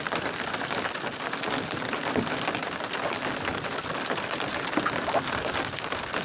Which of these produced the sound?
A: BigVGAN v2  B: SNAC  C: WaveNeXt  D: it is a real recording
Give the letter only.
D